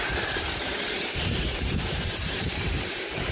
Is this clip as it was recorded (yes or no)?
no